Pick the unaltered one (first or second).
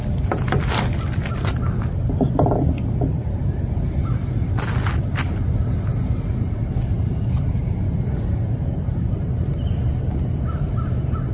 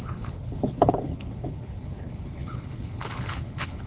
first